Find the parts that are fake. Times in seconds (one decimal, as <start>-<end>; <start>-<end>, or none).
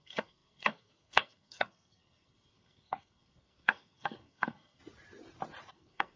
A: 0.0-4.8; 5.7-6.2